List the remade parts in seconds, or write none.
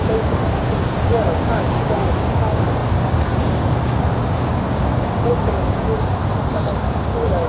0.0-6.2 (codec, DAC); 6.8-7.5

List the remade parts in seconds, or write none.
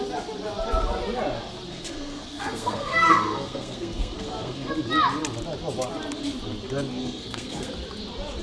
1.7-4.7 (codec, SNAC); 7.0-7.7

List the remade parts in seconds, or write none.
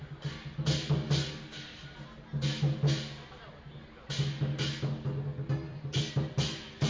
none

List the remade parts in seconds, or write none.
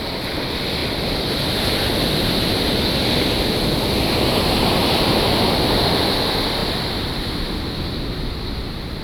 0.8-1.3 (vocoder, BigVGAN v2); 4.8-5.9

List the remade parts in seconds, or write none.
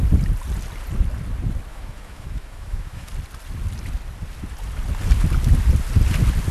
1.7-3.1 (autoencoder, DAC-VAE)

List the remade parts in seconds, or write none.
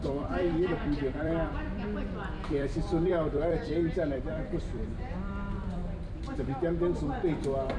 0.0-5.8 (vocoder, BigVGAN v2); 7.0-7.8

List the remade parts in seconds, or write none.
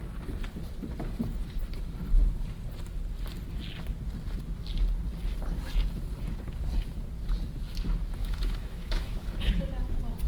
8.2-9.5 (autoencoder, DAC-VAE)